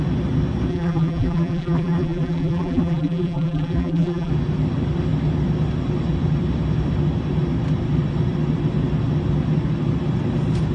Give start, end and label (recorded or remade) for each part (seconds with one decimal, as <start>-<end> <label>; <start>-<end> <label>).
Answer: 0.0-0.7 recorded; 0.7-4.3 remade; 4.3-10.7 recorded